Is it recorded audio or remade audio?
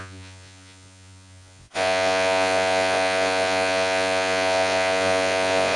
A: remade